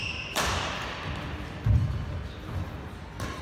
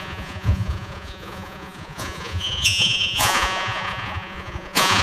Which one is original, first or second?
first